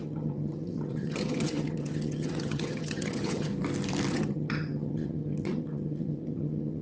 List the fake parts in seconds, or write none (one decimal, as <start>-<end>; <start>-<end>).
0.0-3.5; 4.1-6.8